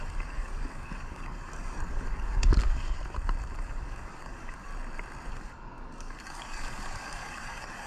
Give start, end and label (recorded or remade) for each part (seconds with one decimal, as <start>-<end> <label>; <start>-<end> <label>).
0.0-3.0 remade; 3.0-3.6 recorded; 3.6-4.7 remade; 4.7-5.3 recorded; 5.3-7.9 remade